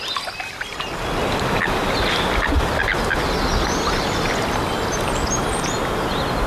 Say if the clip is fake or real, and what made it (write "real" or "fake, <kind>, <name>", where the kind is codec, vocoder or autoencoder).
real